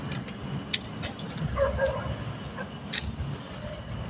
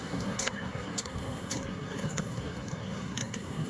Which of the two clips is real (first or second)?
first